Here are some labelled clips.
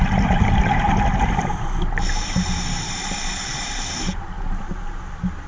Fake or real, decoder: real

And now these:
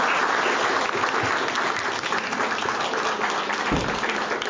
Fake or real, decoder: real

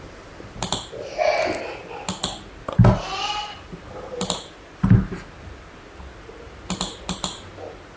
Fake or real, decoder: real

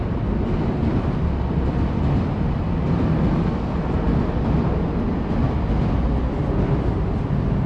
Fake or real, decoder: real